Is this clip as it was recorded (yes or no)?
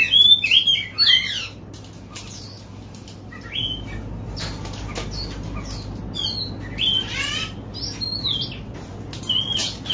yes